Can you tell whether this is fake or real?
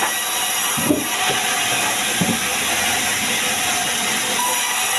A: real